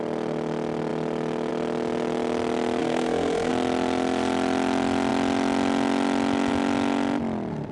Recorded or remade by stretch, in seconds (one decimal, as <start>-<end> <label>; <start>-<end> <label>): 0.0-2.8 recorded; 2.8-3.5 remade; 3.5-7.7 recorded